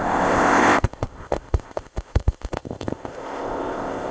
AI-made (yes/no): yes